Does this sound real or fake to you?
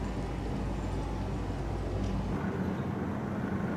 real